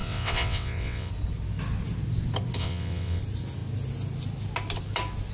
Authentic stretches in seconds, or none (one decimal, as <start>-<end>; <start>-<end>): 1.1-2.6; 3.2-5.3